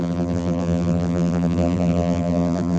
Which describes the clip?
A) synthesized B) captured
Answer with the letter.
A